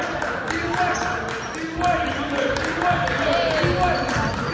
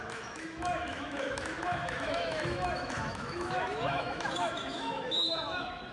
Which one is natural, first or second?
first